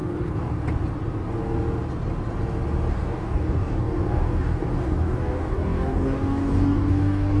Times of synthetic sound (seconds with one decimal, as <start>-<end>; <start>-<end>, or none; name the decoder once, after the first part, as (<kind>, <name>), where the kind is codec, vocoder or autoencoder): 0.0-0.6 (codec, DAC); 2.9-7.4